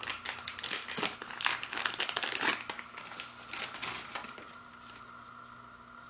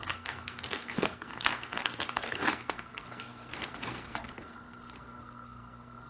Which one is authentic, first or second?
first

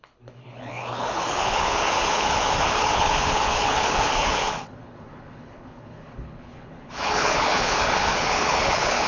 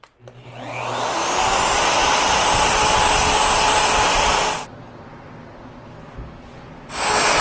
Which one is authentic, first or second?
second